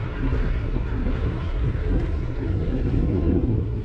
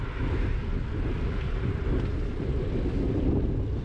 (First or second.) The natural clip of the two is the second